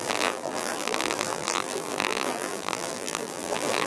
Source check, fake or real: fake